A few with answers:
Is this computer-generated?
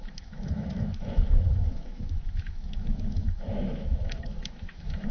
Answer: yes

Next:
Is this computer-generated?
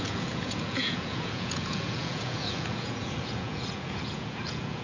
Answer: yes